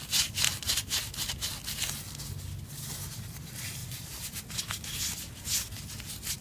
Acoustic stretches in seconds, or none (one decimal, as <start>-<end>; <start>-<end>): 0.0-3.8; 4.4-6.4